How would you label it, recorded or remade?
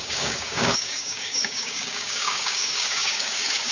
remade